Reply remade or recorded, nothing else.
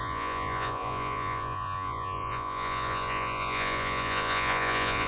remade